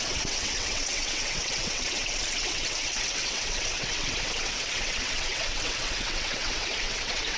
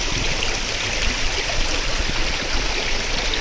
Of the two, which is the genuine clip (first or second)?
second